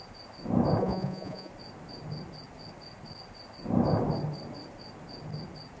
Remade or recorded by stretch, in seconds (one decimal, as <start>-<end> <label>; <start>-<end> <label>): 0.0-0.8 recorded; 0.8-1.5 remade; 1.5-5.8 recorded